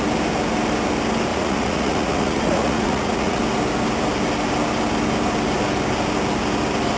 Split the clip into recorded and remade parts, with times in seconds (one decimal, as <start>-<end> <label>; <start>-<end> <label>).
0.0-1.3 recorded; 1.3-3.4 remade; 3.4-7.0 recorded